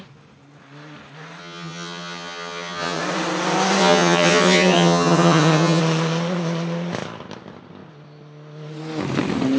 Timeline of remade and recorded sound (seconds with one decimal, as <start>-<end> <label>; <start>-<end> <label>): 0.0-1.4 recorded; 1.4-3.0 remade; 3.0-3.8 recorded; 3.8-5.8 remade; 5.8-9.6 recorded